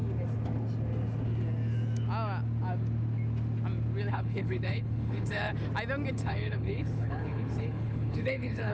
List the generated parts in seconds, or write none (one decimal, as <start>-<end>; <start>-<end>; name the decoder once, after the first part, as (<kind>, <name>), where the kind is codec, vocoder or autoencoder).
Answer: 4.1-5.5 (codec, HILCodec); 6.1-8.7